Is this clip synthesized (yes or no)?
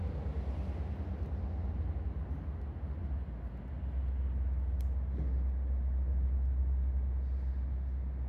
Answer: no